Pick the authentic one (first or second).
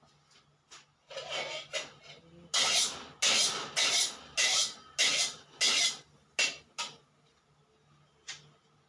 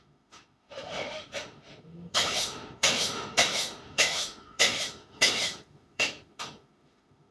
first